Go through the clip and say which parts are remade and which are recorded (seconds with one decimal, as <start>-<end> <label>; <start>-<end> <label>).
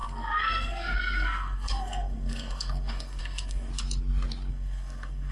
0.0-3.7 remade; 3.7-4.5 recorded; 4.5-5.3 remade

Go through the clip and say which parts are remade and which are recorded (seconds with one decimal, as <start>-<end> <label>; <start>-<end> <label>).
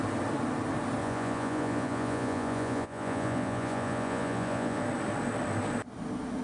0.0-1.0 recorded; 1.0-4.8 remade; 4.8-6.4 recorded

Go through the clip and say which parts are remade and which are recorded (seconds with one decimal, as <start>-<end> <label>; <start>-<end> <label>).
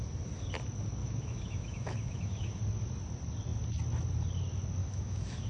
0.0-1.0 recorded; 1.0-2.6 remade; 2.6-4.8 recorded; 4.8-5.5 remade